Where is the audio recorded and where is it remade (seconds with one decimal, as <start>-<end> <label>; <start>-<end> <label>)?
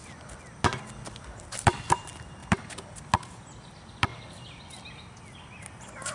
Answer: 0.0-1.0 recorded; 1.0-2.4 remade; 2.4-3.4 recorded; 3.4-4.1 remade; 4.1-5.1 recorded; 5.1-6.1 remade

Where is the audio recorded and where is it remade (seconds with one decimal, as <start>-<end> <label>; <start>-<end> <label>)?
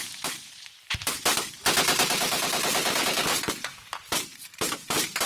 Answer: 0.0-1.0 remade; 1.0-2.1 recorded; 2.1-5.3 remade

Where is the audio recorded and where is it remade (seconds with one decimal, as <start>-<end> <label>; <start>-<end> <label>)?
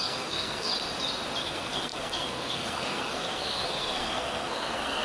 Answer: 0.0-0.7 remade; 0.7-1.4 recorded; 1.4-5.0 remade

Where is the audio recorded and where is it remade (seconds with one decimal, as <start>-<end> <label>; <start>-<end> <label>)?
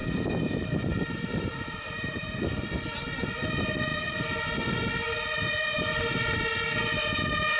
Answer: 0.0-2.5 remade; 2.5-7.6 recorded